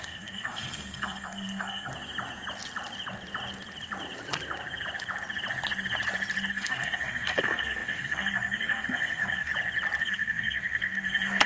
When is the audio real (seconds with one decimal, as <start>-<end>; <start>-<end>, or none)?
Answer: 1.9-6.5; 9.5-10.0